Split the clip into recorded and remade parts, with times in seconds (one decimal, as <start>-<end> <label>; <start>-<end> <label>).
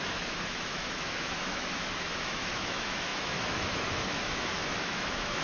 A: 0.0-5.4 remade